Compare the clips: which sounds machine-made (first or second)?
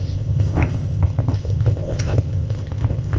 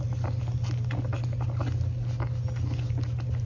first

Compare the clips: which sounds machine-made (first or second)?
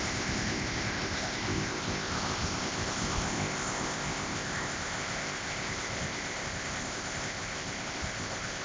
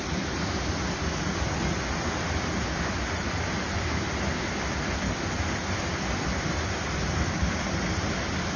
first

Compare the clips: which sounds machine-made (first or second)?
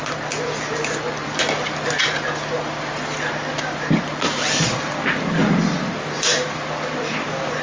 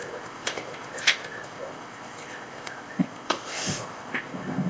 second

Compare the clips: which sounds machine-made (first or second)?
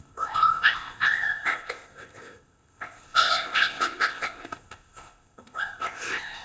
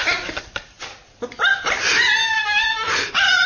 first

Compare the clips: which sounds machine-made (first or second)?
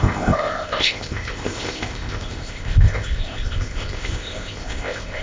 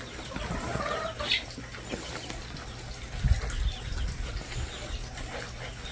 first